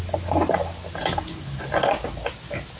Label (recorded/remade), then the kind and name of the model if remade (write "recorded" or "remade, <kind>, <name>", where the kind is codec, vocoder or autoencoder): recorded